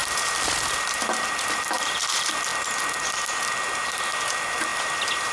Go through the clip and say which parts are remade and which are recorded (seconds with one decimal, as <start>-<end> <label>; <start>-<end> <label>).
0.0-2.5 remade; 2.5-4.3 recorded; 4.3-5.3 remade